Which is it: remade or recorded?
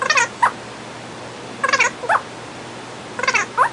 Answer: recorded